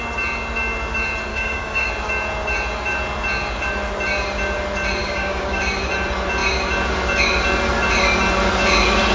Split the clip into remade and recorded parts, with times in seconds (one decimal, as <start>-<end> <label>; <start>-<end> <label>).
0.0-1.3 recorded; 1.3-1.9 remade; 1.9-5.0 recorded; 5.0-5.6 remade; 5.6-9.1 recorded